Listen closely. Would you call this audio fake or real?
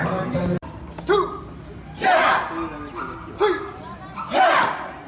real